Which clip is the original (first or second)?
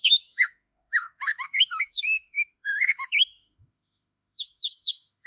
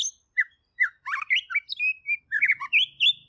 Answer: second